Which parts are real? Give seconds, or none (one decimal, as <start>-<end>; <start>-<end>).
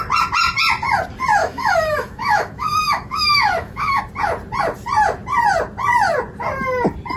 0.0-1.4; 4.0-7.2